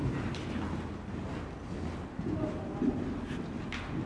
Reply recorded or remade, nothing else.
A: recorded